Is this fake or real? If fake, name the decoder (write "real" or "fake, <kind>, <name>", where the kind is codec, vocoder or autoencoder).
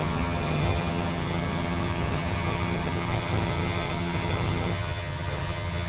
fake, vocoder, HiFi-GAN